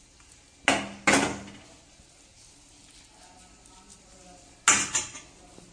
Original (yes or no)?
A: yes